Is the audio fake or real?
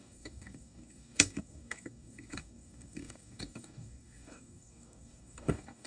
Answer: fake